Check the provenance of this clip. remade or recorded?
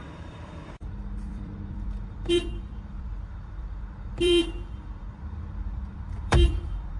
remade